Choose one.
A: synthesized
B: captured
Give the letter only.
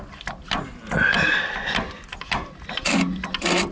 B